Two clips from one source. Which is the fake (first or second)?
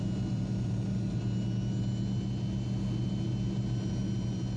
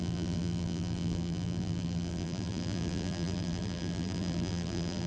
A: second